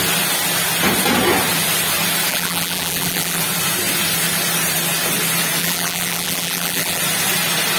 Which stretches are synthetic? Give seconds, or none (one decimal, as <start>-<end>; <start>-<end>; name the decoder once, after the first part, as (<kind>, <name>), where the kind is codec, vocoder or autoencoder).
2.3-3.4 (vocoder, BigVGAN v2); 5.6-7.0